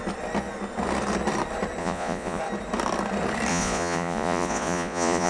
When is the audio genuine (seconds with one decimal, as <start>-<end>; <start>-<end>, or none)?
0.0-1.8; 2.4-3.5